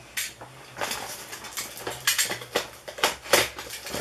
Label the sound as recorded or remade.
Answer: recorded